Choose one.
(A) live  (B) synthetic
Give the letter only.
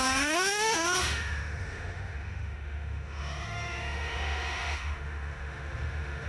B